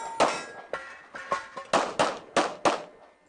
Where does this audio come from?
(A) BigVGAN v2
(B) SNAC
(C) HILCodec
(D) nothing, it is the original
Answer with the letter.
D